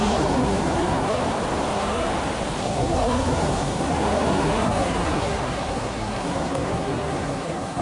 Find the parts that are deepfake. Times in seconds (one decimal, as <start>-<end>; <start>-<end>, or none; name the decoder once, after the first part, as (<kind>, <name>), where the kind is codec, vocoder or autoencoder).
0.0-1.2 (codec, SNAC); 1.7-2.1; 2.6-7.8